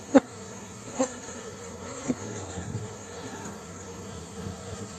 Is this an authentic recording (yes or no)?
no